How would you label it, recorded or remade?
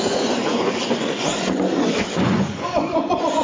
remade